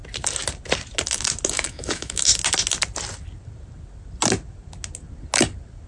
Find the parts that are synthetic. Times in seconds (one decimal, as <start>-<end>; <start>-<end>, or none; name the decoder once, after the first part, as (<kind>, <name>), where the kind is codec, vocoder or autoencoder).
1.5-2.3 (autoencoder, DAC-VAE)